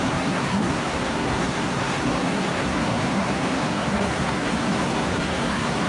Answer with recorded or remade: remade